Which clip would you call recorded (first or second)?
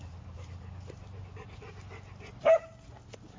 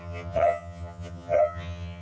first